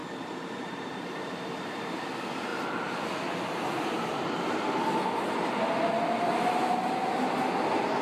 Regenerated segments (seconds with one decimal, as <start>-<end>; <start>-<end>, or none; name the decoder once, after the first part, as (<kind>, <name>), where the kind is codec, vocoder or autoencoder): 0.0-2.0 (vocoder, BigVGAN v2)